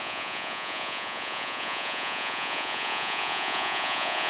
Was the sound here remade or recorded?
remade